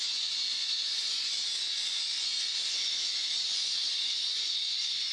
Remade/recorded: remade